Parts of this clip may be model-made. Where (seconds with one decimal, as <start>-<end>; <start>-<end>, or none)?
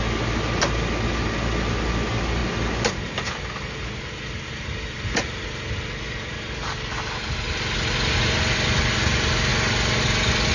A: none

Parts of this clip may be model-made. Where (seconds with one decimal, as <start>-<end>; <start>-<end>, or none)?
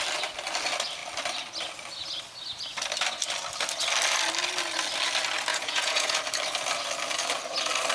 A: 5.5-6.2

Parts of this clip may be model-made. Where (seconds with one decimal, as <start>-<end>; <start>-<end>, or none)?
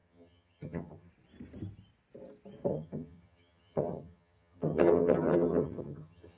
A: 0.0-1.1; 2.7-6.4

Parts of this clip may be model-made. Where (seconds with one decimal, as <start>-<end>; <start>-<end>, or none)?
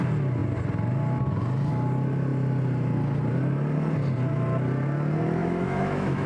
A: 5.4-6.3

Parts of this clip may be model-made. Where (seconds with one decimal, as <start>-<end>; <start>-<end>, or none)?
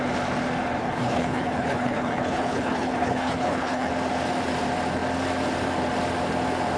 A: 0.8-3.9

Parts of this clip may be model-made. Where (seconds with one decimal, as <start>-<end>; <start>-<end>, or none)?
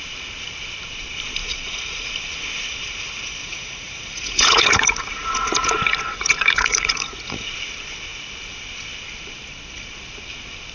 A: 1.4-2.1; 3.4-7.5